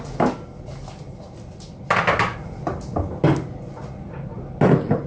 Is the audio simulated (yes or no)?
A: no